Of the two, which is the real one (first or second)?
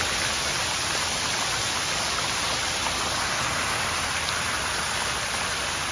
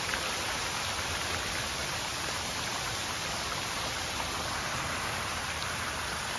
first